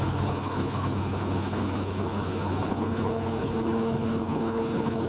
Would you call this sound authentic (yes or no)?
no